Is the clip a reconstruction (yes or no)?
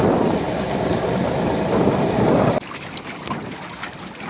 no